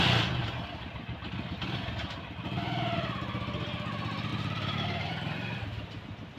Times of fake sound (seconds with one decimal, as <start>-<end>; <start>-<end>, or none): 4.3-5.1